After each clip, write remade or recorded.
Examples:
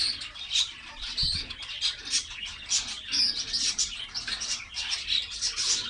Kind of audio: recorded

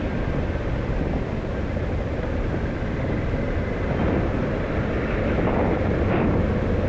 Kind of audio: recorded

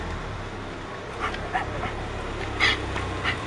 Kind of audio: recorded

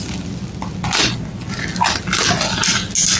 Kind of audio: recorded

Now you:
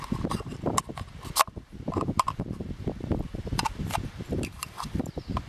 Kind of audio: recorded